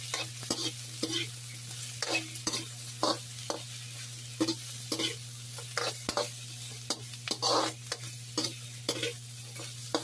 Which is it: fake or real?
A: real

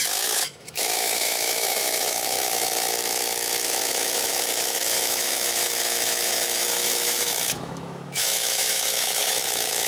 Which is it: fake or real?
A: fake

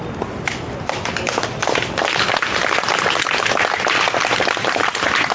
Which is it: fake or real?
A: real